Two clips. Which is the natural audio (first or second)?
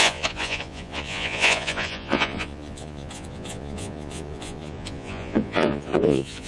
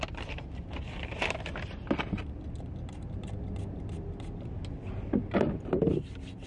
second